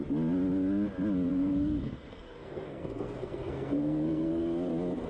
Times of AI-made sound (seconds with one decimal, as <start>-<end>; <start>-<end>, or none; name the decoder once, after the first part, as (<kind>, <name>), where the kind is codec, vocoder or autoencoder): 1.3-4.4 (codec, SNAC)